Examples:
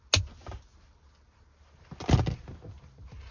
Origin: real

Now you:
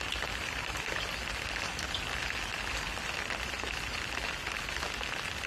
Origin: real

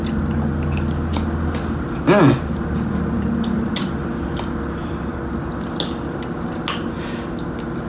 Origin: real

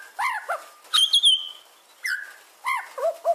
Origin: real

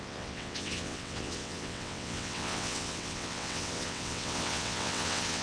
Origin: fake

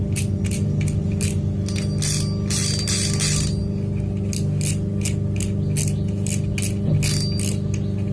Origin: real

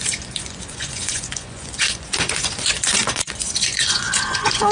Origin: fake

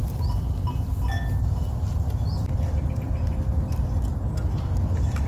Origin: real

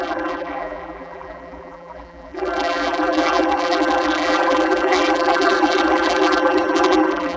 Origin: fake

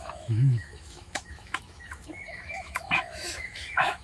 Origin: fake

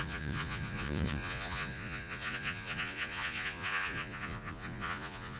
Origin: fake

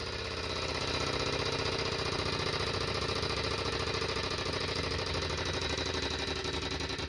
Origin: real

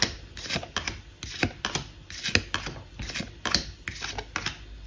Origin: real